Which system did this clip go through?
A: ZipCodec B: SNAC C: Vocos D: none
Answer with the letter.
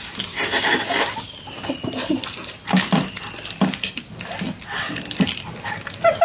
D